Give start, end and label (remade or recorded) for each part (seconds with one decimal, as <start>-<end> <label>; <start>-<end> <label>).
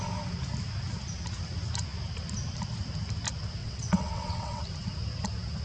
0.0-3.6 recorded; 3.6-4.6 remade; 4.6-5.6 recorded